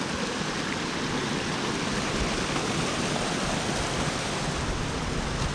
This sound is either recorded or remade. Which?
recorded